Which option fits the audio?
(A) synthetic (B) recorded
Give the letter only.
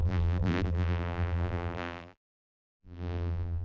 A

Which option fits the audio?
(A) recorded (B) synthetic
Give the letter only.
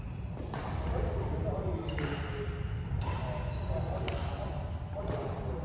A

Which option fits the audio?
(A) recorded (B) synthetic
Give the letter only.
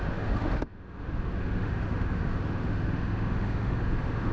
B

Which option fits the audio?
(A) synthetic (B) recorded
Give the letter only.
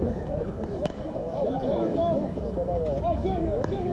A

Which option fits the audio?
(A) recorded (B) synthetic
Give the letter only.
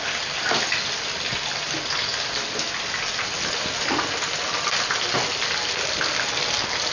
A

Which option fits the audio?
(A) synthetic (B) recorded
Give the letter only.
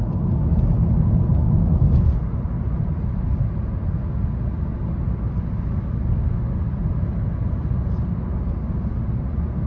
B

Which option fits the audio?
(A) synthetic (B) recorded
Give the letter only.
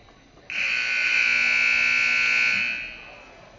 B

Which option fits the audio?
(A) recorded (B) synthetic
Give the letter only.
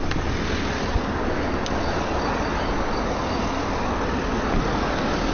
A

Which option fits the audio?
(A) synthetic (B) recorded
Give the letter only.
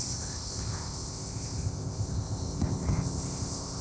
A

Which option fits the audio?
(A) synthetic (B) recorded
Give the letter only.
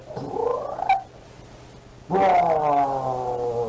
B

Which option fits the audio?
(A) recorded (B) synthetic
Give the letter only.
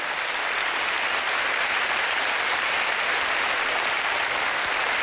A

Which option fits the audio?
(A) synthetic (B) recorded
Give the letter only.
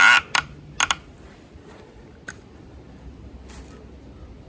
B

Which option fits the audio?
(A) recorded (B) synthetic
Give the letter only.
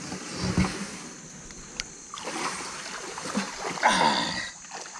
A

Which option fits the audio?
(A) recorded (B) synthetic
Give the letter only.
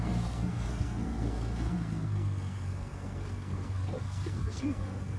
B